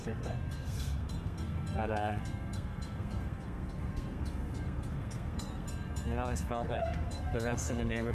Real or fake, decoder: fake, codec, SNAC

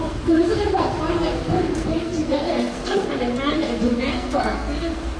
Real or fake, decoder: fake, codec, SNAC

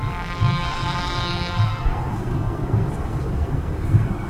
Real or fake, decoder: fake, codec, SNAC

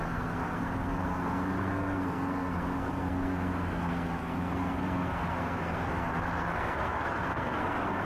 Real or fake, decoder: fake, codec, SNAC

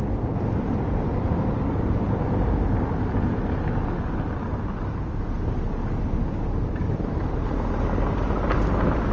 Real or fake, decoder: real